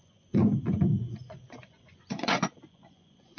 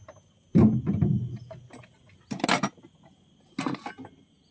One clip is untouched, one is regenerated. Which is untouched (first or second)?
second